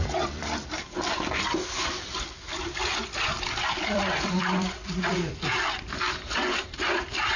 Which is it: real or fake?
fake